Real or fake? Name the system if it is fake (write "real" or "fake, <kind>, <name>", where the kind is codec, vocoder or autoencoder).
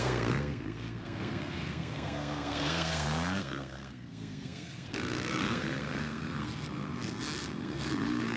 fake, codec, SNAC